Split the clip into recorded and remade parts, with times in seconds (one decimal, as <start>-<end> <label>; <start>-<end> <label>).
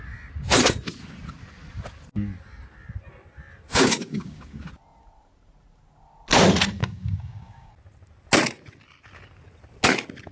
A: 0.0-3.7 recorded; 3.7-4.6 remade; 4.6-6.8 recorded; 6.8-7.7 remade; 7.7-10.3 recorded